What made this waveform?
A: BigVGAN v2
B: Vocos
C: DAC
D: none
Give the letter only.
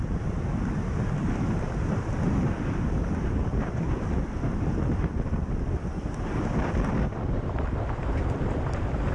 A